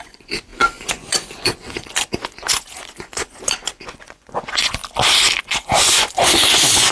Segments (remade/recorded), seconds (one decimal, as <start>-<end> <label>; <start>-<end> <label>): 0.0-4.8 remade; 4.8-5.4 recorded; 5.4-6.9 remade